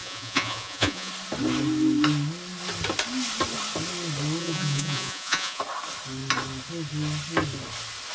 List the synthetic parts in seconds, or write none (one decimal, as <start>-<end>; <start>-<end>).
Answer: 0.0-1.1; 4.4-5.6